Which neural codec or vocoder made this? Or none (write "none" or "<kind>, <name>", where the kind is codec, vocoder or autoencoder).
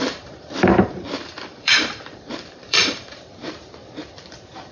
vocoder, BigVGAN v2